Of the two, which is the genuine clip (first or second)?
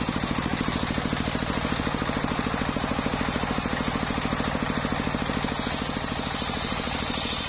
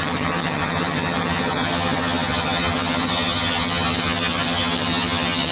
first